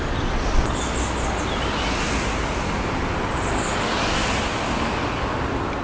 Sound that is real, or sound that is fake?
real